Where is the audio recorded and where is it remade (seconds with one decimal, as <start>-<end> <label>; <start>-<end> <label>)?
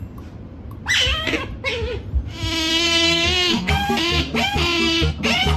0.0-2.7 recorded; 2.7-3.7 remade; 3.7-5.6 recorded